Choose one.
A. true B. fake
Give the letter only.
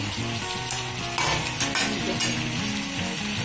A